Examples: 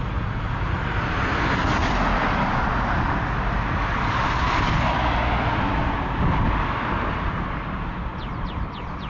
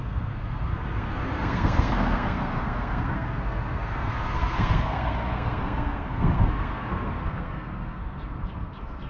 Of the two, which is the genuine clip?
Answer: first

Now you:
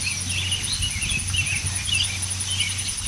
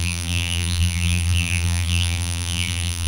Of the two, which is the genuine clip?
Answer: first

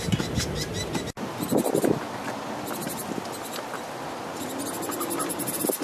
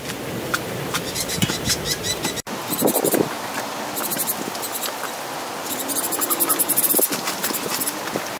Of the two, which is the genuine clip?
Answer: first